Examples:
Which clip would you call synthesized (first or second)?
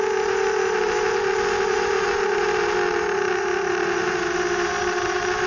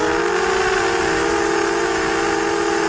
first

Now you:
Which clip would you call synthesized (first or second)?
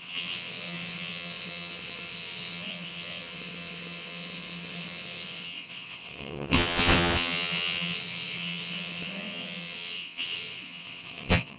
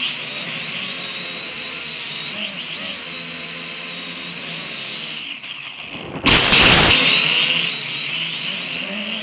first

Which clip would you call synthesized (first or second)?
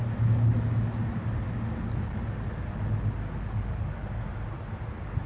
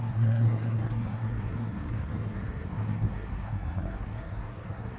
second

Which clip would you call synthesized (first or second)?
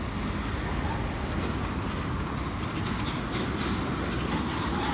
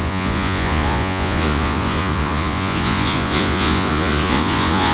second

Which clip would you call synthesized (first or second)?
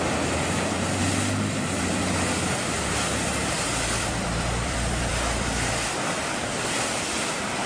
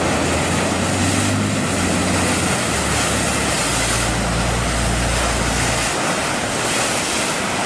first